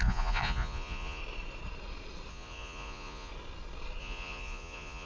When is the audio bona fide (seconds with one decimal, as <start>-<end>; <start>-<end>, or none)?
1.2-2.3; 3.3-4.0